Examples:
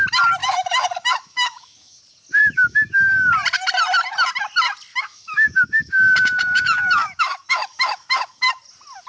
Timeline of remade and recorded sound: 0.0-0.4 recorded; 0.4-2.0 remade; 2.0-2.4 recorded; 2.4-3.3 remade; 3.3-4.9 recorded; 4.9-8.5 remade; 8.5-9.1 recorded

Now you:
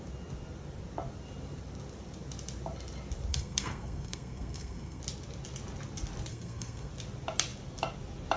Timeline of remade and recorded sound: 0.0-3.3 recorded; 3.3-5.0 remade; 5.0-6.3 recorded; 6.3-6.9 remade; 6.9-8.4 recorded

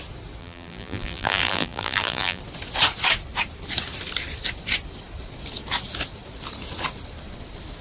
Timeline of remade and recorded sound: 0.0-0.4 recorded; 0.4-2.4 remade; 2.4-7.8 recorded